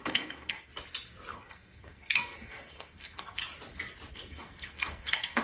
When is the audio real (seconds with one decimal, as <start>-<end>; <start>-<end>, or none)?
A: 0.7-1.3; 3.4-4.1